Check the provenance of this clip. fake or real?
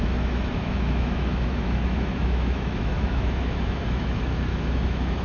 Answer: fake